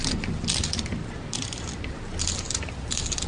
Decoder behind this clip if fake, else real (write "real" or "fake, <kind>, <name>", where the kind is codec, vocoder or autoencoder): real